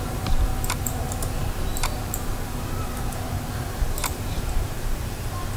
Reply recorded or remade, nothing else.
remade